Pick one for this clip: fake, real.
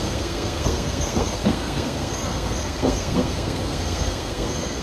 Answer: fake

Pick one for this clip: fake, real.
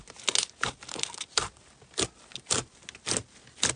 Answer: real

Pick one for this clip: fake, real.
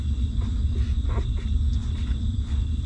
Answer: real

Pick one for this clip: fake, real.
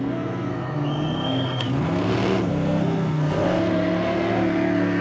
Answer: fake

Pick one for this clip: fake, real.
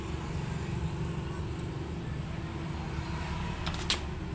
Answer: real